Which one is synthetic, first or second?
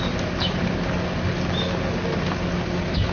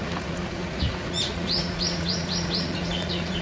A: second